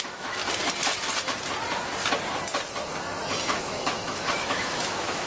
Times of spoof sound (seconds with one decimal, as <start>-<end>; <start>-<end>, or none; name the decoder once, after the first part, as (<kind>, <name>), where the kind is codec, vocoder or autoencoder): 0.0-0.4 (autoencoder, DAC-VAE); 3.6-5.3